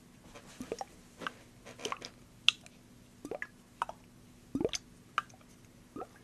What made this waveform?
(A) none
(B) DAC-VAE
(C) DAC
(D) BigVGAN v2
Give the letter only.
A